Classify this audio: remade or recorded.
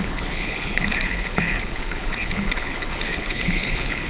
remade